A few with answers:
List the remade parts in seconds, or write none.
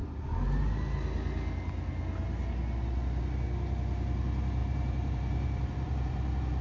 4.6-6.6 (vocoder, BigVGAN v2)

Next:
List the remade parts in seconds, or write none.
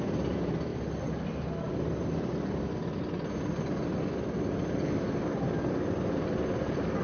none